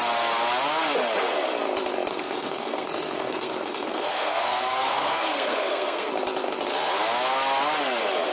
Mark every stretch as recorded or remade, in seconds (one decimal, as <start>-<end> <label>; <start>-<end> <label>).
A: 0.0-2.1 recorded; 2.1-6.1 remade; 6.1-8.3 recorded